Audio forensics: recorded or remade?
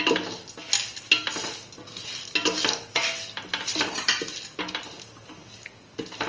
recorded